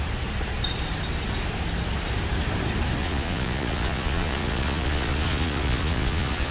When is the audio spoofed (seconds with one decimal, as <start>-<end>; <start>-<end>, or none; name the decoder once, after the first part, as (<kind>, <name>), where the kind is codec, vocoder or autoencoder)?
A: 3.0-6.5 (vocoder, Vocos)